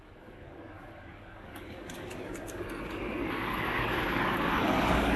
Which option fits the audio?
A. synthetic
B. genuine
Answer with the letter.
A